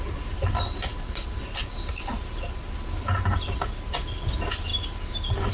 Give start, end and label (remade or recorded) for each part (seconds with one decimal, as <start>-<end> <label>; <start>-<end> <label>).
0.0-5.5 recorded